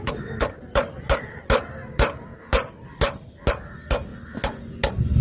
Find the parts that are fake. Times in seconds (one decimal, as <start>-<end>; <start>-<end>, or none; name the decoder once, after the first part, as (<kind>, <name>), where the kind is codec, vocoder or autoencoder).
2.3-3.5 (vocoder, BigVGAN v2)